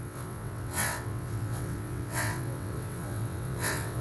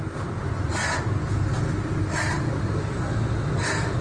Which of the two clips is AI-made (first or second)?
first